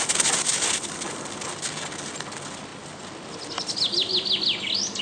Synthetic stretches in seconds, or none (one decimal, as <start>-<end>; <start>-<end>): none

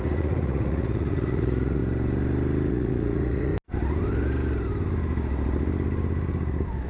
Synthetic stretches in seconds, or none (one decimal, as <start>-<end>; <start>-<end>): 0.0-1.8; 2.7-3.5

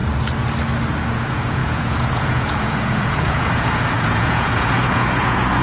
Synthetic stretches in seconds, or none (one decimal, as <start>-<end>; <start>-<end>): 1.1-5.6

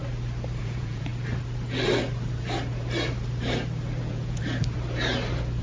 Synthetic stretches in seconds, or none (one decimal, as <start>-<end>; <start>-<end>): 0.6-1.1; 4.0-4.4

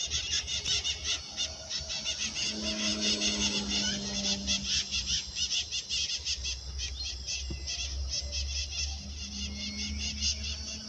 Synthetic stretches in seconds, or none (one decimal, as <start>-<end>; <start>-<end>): none

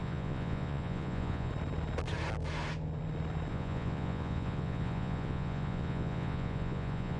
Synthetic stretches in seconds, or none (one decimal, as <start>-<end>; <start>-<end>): 0.0-1.5; 3.5-7.2

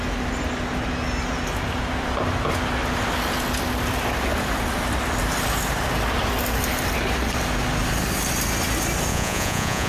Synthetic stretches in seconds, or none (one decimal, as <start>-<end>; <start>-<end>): 9.1-9.9

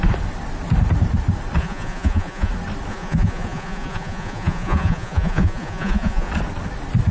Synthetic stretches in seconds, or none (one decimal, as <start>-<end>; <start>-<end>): 1.6-2.5; 2.9-6.3